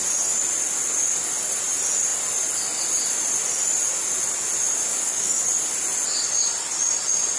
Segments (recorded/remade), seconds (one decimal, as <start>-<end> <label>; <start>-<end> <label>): 0.0-4.9 recorded; 4.9-5.4 remade; 5.4-7.4 recorded